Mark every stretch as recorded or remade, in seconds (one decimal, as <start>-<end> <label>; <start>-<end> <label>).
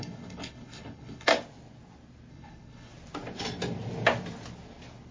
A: 0.0-1.3 remade; 1.3-2.3 recorded; 2.3-2.9 remade; 2.9-5.1 recorded